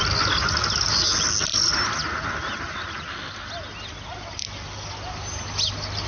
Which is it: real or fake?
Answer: real